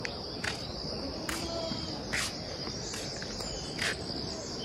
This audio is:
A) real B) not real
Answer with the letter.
A